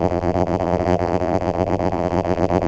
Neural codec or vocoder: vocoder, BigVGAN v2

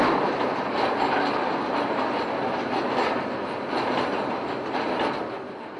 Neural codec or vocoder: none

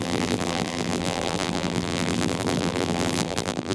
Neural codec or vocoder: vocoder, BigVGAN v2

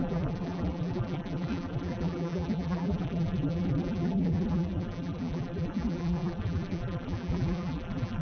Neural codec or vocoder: vocoder, BigVGAN v2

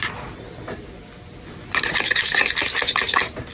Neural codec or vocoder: vocoder, BigVGAN v2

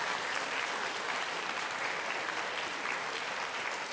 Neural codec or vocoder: vocoder, BigVGAN v2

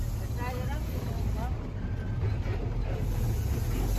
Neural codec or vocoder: none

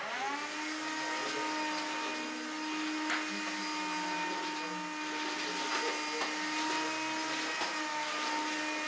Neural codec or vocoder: none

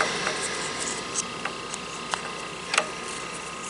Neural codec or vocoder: vocoder, BigVGAN v2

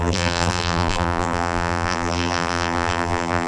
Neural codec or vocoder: vocoder, BigVGAN v2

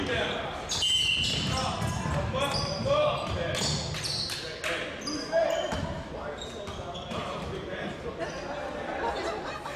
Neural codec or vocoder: none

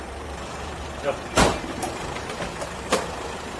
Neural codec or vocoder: vocoder, BigVGAN v2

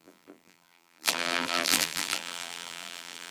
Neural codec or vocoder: vocoder, BigVGAN v2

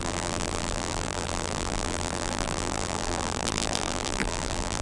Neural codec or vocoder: vocoder, BigVGAN v2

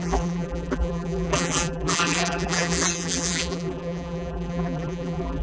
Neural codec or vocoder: vocoder, BigVGAN v2